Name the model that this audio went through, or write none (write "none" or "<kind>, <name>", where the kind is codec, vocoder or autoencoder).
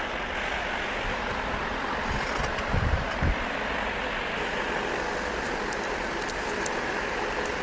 none